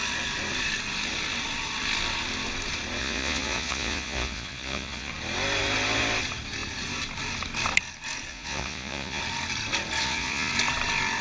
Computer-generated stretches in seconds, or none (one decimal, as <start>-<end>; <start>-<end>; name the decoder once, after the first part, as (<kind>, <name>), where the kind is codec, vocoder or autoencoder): 3.0-5.1 (vocoder, Vocos); 8.3-9.2; 10.0-10.5